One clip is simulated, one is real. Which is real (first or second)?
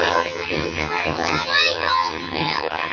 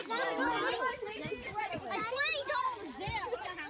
second